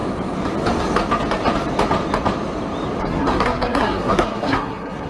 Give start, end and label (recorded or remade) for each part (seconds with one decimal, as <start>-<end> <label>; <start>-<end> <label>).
0.0-3.0 recorded; 3.0-5.1 remade